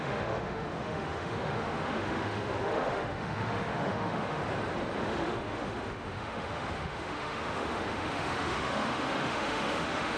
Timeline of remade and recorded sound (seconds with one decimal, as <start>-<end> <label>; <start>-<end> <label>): 0.0-4.4 remade; 4.4-5.0 recorded; 5.0-10.2 remade